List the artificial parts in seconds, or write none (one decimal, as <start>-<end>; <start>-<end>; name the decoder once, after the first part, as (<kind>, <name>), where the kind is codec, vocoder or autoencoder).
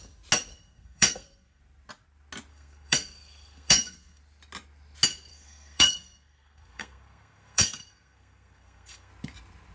0.5-1.6 (codec, SNAC); 2.5-4.2; 5.3-9.1